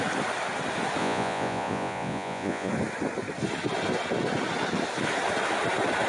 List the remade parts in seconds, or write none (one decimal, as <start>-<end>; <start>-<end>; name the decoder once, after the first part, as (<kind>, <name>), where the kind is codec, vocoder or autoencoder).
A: 1.0-2.7 (vocoder, Vocos)